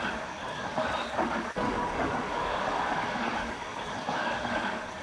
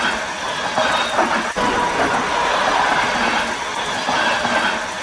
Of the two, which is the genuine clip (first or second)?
second